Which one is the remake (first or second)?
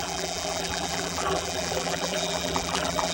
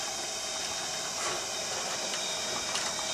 first